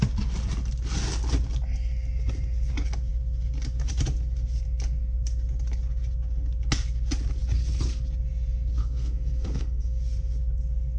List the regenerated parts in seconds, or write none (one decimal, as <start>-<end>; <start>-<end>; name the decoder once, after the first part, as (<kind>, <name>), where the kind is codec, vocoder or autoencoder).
8.8-10.0 (codec, SNAC)